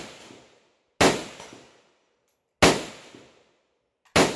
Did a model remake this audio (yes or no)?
no